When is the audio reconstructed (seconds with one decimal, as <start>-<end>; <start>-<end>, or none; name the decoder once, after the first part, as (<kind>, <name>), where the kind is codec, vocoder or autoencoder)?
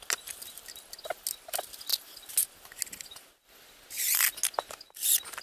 none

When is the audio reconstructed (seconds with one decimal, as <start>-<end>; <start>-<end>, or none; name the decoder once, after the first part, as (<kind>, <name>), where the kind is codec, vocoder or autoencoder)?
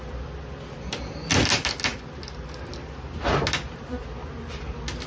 none